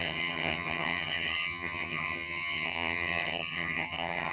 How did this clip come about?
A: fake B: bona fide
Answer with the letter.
A